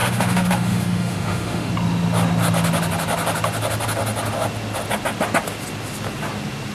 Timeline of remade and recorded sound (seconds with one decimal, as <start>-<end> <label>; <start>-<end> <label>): 0.0-1.7 remade; 1.7-6.7 recorded

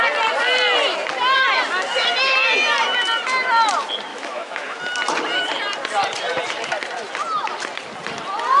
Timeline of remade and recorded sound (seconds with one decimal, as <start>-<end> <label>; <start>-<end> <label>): 0.0-4.1 recorded; 4.1-4.8 remade; 4.8-8.6 recorded

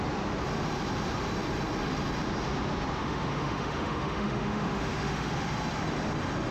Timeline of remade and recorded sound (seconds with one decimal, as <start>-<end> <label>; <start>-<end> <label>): 0.0-3.0 recorded; 3.0-5.3 remade; 5.3-6.5 recorded

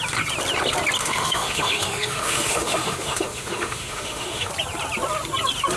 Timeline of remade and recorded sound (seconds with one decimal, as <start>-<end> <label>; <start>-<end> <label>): 0.0-1.0 recorded; 1.0-4.5 remade; 4.5-5.8 recorded

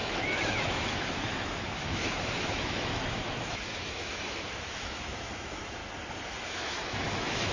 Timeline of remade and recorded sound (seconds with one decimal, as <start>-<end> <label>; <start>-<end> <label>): 0.0-5.8 remade; 5.8-6.4 recorded; 6.4-7.5 remade